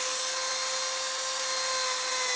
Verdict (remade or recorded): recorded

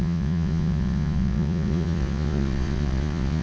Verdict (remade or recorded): remade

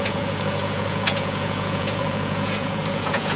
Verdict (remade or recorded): remade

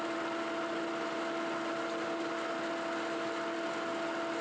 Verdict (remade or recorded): recorded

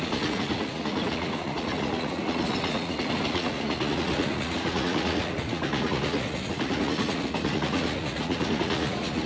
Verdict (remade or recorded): remade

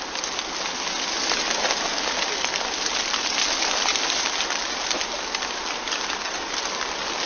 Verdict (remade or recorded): recorded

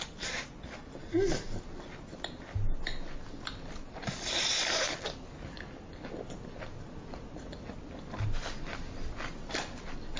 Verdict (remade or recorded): recorded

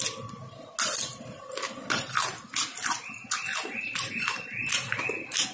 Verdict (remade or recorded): recorded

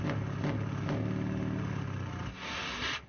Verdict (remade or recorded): recorded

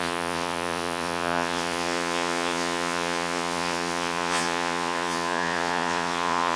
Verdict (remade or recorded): remade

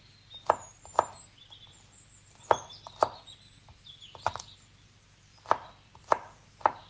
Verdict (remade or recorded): recorded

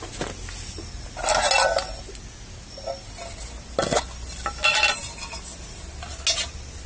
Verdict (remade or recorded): recorded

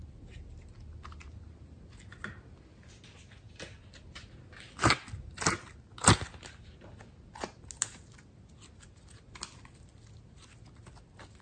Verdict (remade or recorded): recorded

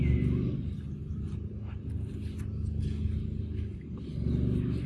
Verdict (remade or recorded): recorded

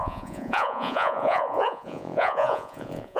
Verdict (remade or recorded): remade